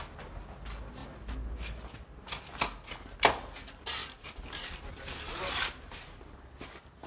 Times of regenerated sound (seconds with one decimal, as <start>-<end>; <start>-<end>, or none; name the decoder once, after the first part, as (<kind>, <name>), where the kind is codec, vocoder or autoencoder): none